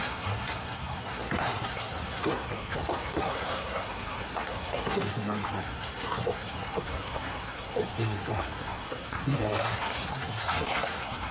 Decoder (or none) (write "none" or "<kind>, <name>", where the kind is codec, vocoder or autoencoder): codec, SNAC